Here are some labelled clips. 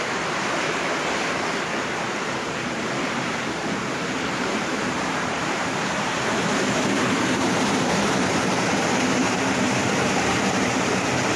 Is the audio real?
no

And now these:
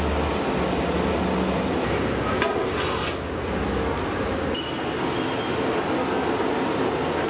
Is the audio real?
yes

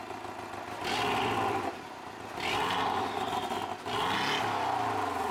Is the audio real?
yes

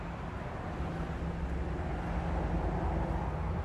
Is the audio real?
yes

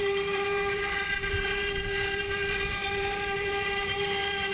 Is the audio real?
no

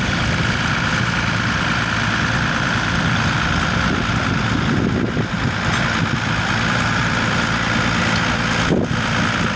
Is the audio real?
yes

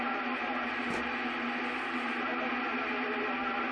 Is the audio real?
yes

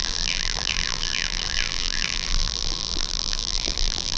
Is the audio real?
no